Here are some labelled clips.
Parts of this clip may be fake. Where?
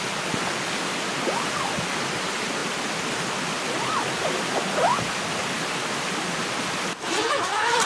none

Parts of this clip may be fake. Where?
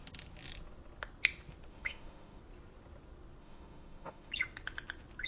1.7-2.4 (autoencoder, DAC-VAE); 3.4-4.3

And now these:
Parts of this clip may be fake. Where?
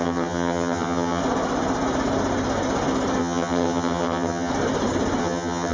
0.0-1.2 (vocoder, HiFi-GAN); 3.2-4.5; 5.2-5.7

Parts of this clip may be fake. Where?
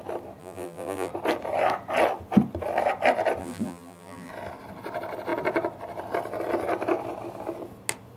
0.4-1.1 (vocoder, BigVGAN v2); 3.4-4.3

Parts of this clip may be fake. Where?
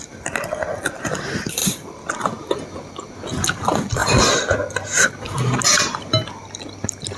none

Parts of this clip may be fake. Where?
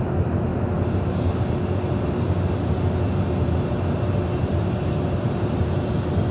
none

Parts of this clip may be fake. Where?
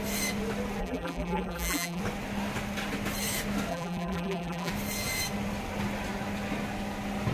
0.8-2.0 (vocoder, BigVGAN v2); 3.7-4.7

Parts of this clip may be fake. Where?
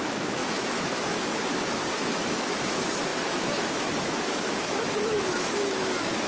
0.0-6.3 (autoencoder, DAC-VAE)